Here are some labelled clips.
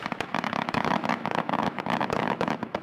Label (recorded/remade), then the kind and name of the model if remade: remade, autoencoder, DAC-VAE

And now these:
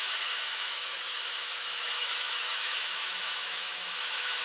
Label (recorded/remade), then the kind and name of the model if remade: remade, autoencoder, DAC-VAE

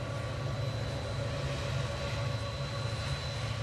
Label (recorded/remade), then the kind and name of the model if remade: recorded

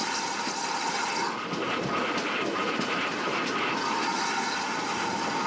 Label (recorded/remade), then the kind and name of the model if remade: recorded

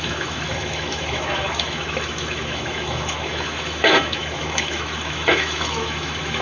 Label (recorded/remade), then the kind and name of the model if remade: remade, autoencoder, DAC-VAE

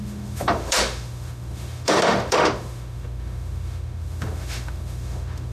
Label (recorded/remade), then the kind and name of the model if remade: remade, autoencoder, DAC-VAE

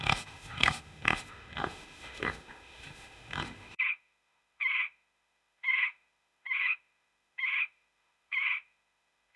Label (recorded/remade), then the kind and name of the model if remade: remade, autoencoder, DAC-VAE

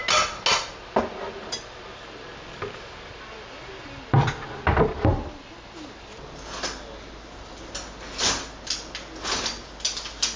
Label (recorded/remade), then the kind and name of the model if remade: recorded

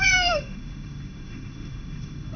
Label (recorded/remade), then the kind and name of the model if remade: remade, autoencoder, DAC-VAE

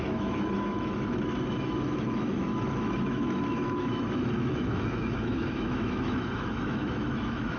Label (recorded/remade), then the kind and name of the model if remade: remade, autoencoder, DAC-VAE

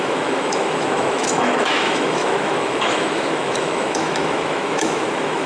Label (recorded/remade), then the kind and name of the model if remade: remade, autoencoder, DAC-VAE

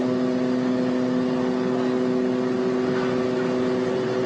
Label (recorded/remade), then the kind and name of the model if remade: recorded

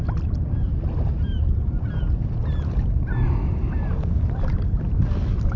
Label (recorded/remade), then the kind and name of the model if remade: recorded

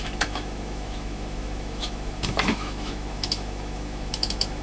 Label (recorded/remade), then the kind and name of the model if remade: remade, autoencoder, DAC-VAE